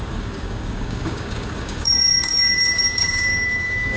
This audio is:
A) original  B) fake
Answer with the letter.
B